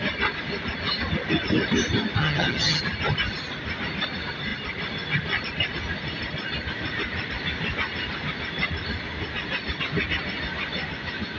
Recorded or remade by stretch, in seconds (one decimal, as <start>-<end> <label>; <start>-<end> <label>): 0.0-2.2 recorded; 2.2-2.8 remade; 2.8-11.4 recorded